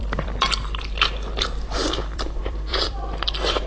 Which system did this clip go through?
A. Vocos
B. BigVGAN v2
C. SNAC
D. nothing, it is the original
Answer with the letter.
B